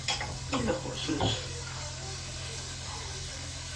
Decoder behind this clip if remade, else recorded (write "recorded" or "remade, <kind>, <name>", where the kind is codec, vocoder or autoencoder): remade, codec, DAC